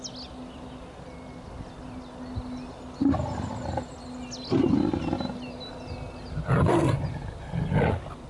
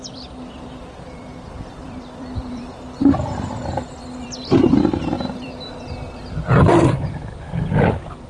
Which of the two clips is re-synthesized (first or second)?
second